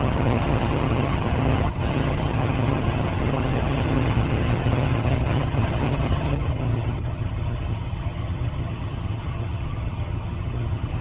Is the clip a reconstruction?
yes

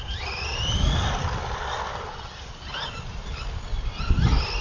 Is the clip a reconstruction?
no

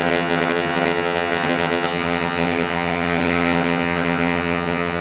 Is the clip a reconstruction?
yes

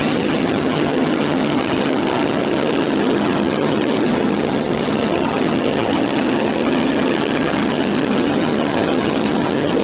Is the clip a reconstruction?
yes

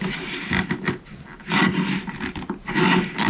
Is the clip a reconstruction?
no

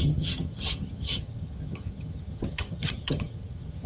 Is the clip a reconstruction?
yes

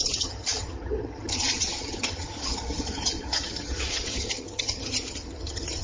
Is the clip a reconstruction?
yes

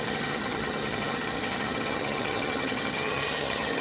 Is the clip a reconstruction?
yes